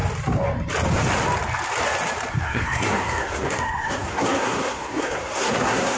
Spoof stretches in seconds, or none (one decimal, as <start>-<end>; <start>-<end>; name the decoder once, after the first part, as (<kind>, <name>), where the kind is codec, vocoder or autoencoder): 2.3-6.0 (codec, SNAC)